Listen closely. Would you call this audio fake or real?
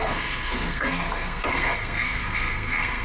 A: fake